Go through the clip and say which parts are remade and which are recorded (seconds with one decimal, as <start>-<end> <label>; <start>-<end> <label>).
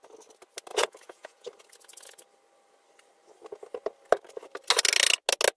0.0-0.7 recorded; 0.7-1.5 remade; 1.5-5.6 recorded